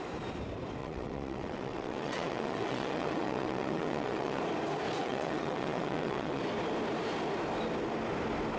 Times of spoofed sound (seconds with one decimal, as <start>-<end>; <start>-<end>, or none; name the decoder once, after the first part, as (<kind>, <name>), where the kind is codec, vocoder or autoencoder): 0.8-4.4 (vocoder, WaveNeXt); 5.0-6.4